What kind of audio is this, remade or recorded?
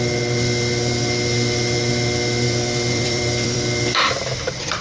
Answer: remade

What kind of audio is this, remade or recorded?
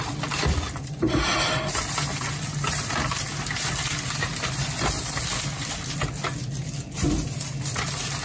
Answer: recorded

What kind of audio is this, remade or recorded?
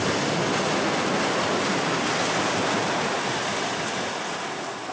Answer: recorded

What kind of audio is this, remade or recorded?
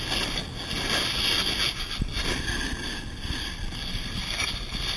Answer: recorded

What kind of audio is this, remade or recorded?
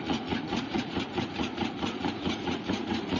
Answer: remade